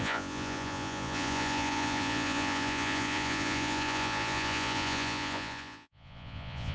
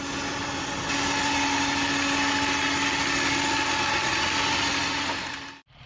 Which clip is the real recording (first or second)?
second